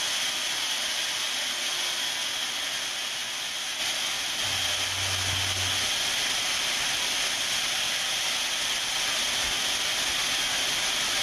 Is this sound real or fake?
real